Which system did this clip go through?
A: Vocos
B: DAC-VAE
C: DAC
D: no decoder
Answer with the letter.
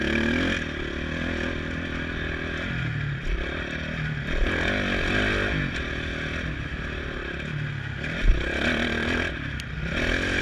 D